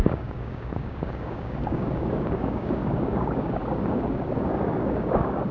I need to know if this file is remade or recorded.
remade